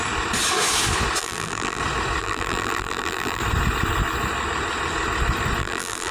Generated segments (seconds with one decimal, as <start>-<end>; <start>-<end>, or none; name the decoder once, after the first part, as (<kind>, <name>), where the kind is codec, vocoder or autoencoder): 1.2-1.8 (vocoder, BigVGAN v2); 2.2-3.4; 5.6-6.1